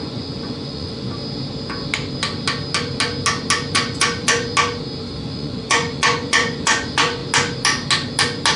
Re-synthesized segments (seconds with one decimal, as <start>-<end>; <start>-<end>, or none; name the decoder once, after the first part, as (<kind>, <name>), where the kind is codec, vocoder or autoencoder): 0.0-1.2 (vocoder, Vocos); 3.7-4.5; 5.2-7.2